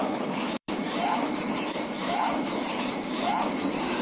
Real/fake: fake